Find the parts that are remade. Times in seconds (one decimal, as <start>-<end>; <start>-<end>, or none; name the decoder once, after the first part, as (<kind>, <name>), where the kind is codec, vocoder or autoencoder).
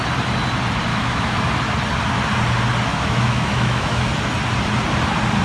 0.9-1.4 (autoencoder, DAC-VAE); 2.9-4.1